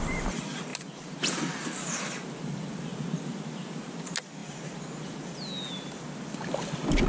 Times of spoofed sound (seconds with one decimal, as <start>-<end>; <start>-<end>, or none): none

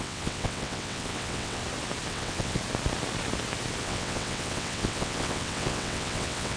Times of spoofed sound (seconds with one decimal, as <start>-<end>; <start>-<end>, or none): 0.0-1.6; 2.1-2.6; 3.8-6.6

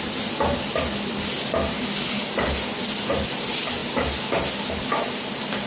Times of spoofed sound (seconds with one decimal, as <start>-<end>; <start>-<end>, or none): none

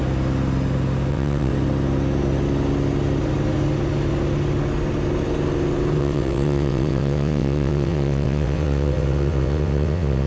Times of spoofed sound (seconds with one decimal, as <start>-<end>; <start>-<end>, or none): 1.1-1.5; 6.0-10.3

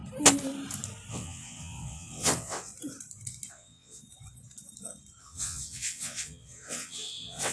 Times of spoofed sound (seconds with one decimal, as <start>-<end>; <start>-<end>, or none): 1.1-2.7; 3.5-4.0; 5.2-7.5

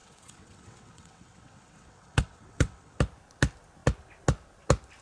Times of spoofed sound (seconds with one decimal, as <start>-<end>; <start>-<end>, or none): 0.0-3.0

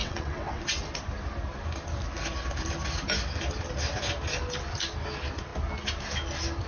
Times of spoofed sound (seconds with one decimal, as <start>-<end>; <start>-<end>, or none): 0.0-0.6

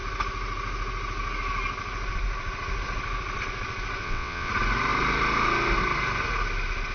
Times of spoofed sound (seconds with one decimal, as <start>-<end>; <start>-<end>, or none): 4.0-4.5